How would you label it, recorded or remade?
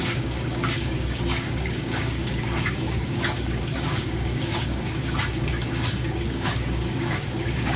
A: remade